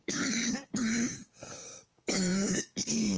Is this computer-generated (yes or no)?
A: yes